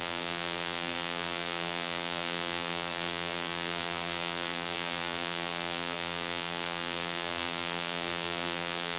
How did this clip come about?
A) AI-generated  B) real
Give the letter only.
A